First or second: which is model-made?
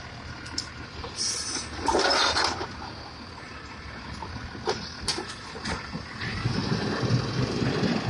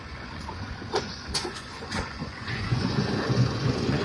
second